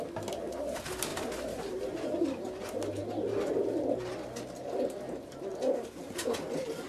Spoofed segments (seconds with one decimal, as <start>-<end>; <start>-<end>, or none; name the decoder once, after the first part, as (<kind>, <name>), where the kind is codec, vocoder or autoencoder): none